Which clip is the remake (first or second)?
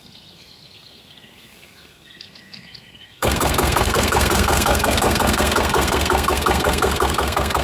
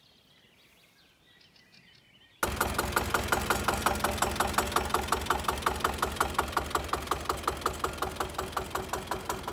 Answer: first